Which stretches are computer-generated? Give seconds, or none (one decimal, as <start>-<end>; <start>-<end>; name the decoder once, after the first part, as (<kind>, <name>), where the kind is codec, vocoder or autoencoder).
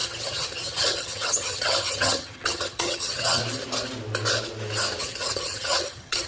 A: 0.0-3.4 (vocoder, HiFi-GAN); 5.0-6.3